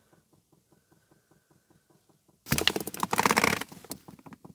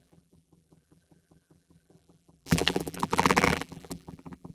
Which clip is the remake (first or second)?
second